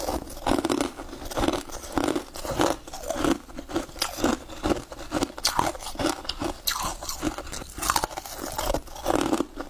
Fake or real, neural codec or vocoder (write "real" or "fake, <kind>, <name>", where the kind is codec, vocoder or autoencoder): real